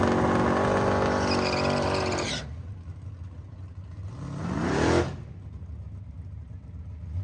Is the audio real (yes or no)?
yes